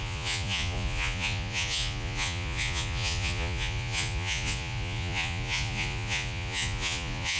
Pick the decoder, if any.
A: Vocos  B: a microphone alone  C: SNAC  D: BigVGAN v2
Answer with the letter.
A